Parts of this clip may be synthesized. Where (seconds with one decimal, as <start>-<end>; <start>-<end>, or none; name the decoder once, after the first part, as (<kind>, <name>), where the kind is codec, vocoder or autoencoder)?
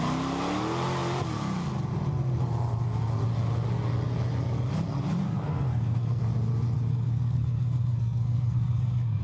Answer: 5.2-6.2 (codec, SNAC); 6.9-9.2